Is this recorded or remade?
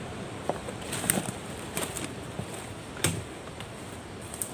remade